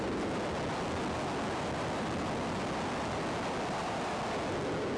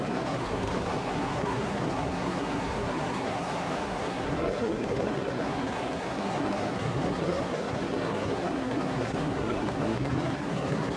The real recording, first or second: first